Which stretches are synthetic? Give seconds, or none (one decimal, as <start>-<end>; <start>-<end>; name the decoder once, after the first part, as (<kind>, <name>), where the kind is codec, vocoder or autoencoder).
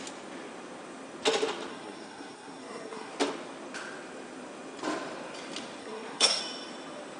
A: 1.7-3.1 (codec, SNAC); 5.8-6.4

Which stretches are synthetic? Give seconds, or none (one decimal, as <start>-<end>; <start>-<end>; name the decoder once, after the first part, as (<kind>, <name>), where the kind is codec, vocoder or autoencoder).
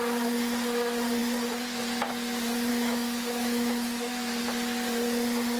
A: 2.7-4.4 (autoencoder, DAC-VAE)